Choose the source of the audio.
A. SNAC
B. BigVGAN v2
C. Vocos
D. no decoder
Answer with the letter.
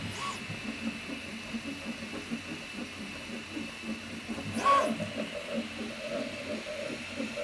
D